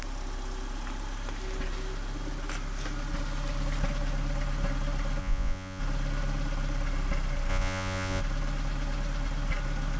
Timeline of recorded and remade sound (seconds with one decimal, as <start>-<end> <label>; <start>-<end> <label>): 0.0-5.2 recorded; 5.2-5.8 remade; 5.8-7.5 recorded; 7.5-8.2 remade; 8.2-10.0 recorded

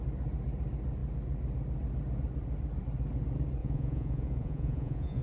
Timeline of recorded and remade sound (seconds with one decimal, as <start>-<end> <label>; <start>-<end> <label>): 0.0-3.6 recorded; 3.6-5.2 remade

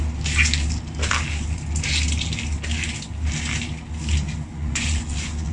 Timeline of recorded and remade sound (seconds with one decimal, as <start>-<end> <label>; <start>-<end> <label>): 0.0-4.5 recorded; 4.5-5.5 remade

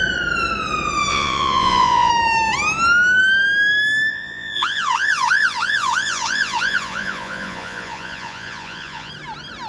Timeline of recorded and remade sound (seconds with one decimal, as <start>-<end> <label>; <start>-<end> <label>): 0.0-1.1 recorded; 1.1-2.1 remade; 2.1-4.1 recorded; 4.1-9.1 remade; 9.1-9.7 recorded

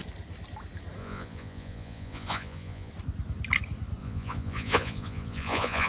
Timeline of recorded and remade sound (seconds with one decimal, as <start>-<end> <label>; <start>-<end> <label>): 0.0-1.0 recorded; 1.0-2.9 remade; 2.9-4.0 recorded; 4.0-5.9 remade

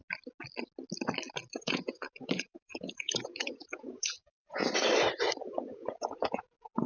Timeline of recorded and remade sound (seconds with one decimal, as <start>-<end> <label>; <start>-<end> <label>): 0.0-1.5 recorded; 1.5-4.6 remade; 4.6-5.4 recorded; 5.4-6.9 remade

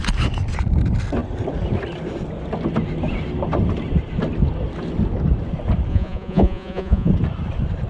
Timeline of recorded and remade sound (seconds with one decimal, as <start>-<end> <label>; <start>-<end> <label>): 0.0-5.9 recorded; 5.9-7.1 remade; 7.1-7.9 recorded